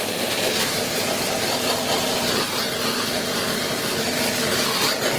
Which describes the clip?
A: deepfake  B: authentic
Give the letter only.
B